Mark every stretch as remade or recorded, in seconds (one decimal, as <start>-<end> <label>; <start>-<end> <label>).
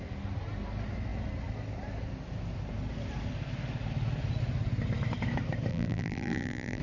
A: 0.0-5.7 recorded; 5.7-6.8 remade